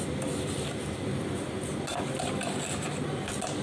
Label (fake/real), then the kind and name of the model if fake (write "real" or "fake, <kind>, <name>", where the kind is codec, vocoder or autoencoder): real